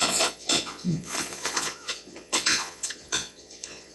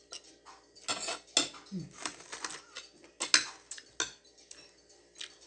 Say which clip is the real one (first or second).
second